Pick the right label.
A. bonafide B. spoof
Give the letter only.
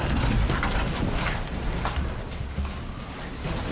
A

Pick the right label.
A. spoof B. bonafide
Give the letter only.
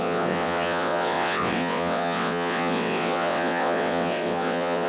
A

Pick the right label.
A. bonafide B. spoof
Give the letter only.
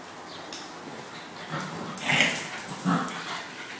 A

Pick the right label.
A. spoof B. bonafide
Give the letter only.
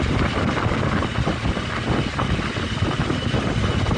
B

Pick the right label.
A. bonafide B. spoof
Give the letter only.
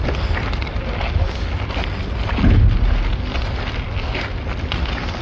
A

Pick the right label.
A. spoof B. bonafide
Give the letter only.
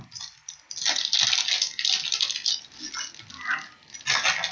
B